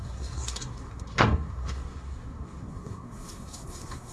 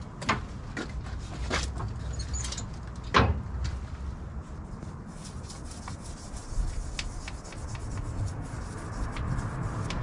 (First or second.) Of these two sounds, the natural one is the second